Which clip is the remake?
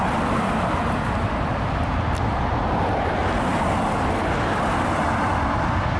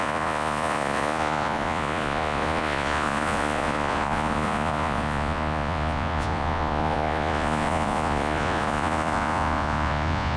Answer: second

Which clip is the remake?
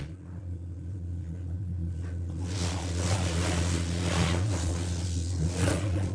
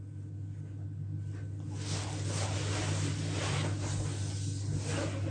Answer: first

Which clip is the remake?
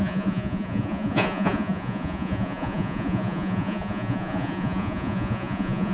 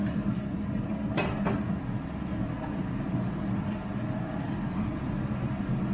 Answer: first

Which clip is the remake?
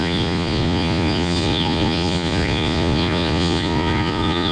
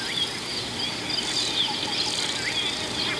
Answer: first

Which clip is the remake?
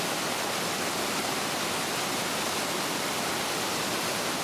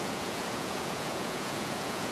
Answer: second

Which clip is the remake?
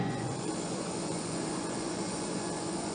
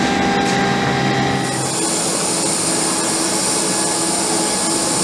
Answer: first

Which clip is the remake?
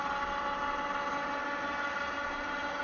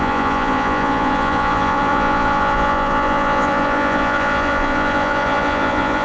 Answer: second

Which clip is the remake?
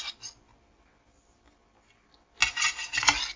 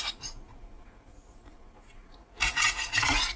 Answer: second